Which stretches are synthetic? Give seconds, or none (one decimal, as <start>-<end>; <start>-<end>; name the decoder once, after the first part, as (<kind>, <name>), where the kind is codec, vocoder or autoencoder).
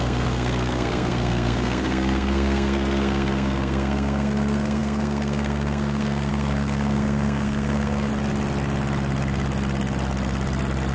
0.0-8.1 (codec, SNAC)